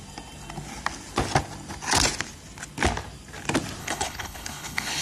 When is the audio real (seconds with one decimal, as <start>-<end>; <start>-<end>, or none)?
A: 0.0-3.8